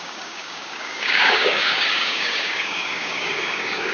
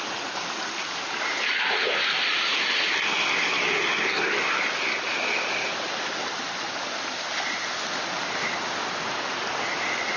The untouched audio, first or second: second